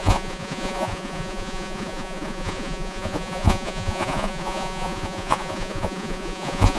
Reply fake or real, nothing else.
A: fake